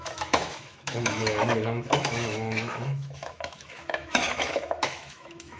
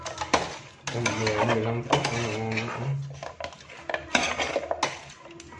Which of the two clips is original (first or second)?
second